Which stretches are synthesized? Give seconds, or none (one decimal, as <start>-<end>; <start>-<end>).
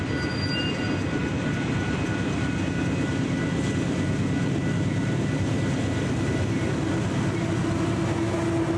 none